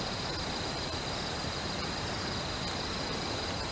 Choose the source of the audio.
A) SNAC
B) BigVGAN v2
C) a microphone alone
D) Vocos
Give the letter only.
C